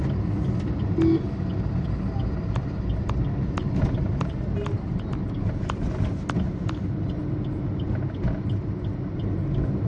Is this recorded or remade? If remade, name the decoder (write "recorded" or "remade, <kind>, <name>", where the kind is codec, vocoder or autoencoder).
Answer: recorded